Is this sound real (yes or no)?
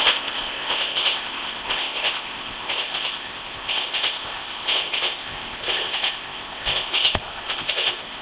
no